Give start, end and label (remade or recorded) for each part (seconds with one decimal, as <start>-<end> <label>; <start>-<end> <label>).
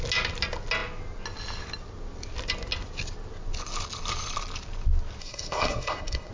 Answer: 0.0-5.2 recorded; 5.2-6.3 remade